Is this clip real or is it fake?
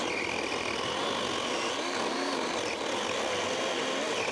real